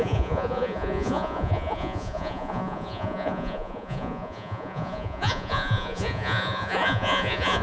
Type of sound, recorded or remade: remade